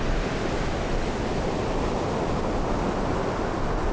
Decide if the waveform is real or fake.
real